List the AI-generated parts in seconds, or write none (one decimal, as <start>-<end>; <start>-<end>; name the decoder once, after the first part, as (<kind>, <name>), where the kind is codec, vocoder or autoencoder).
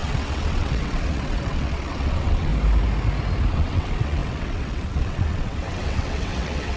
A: 0.0-2.5 (vocoder, WaveNeXt); 3.5-6.8